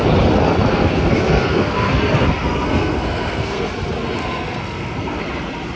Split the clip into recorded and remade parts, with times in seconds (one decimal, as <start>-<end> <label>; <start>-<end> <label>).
0.0-0.7 recorded; 0.7-3.7 remade; 3.7-4.2 recorded; 4.2-5.2 remade; 5.2-5.8 recorded